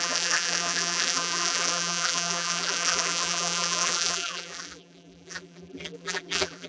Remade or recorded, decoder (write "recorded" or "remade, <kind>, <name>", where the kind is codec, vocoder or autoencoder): remade, vocoder, BigVGAN v2